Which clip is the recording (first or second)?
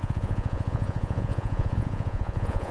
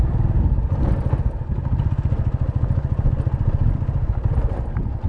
second